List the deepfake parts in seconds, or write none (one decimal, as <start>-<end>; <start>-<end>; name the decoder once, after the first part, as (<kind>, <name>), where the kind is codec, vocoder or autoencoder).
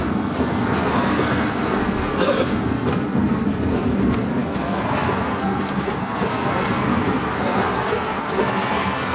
0.0-9.1 (codec, SNAC)